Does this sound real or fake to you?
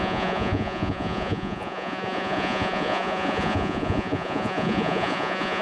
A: fake